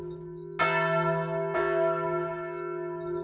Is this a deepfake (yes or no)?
no